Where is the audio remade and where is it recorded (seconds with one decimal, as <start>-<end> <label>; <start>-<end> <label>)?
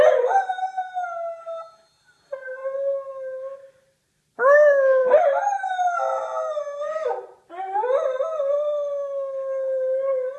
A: 0.0-10.4 recorded